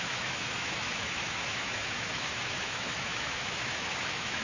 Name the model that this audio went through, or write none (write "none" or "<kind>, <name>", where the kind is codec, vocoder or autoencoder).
autoencoder, DAC-VAE